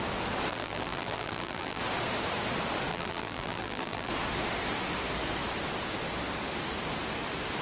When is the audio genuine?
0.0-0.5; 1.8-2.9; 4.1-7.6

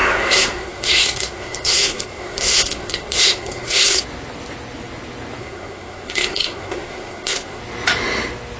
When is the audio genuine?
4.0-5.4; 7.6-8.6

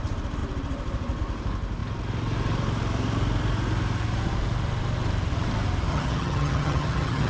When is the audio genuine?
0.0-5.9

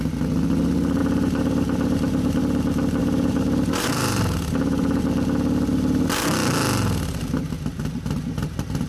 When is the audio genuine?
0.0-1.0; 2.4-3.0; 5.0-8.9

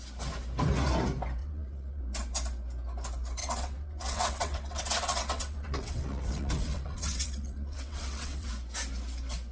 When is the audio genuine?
0.0-1.4; 2.0-3.4; 8.5-9.5